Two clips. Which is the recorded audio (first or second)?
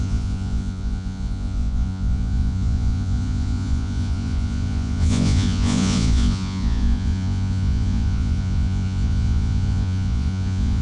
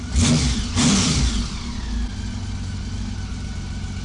second